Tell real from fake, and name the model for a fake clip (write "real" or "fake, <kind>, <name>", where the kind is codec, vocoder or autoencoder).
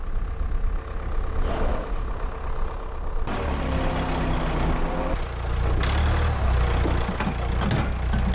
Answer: real